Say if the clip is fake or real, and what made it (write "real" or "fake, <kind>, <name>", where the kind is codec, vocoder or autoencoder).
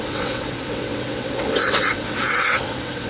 fake, vocoder, WaveNeXt